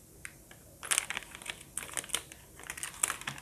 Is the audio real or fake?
real